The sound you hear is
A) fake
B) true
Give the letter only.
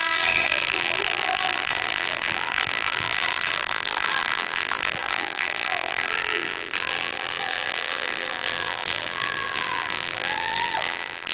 A